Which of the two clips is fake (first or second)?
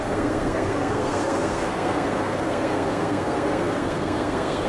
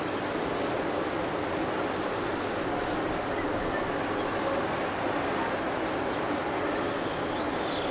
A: first